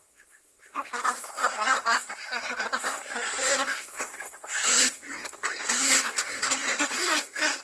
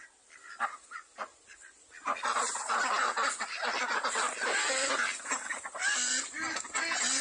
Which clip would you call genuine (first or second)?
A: second